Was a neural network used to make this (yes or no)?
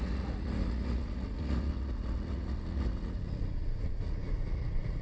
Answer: yes